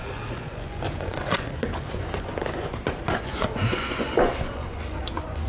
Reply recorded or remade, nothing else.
remade